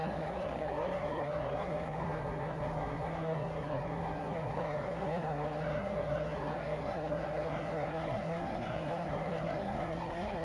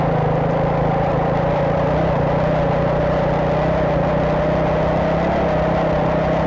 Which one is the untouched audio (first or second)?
second